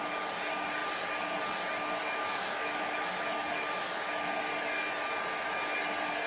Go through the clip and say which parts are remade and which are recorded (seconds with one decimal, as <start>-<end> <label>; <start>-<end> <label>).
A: 0.0-2.0 recorded; 2.0-4.3 remade; 4.3-6.3 recorded